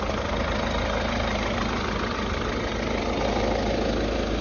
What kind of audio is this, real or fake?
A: real